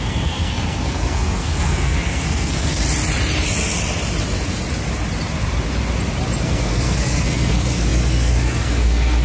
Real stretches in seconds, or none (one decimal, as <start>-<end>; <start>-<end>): 2.8-6.4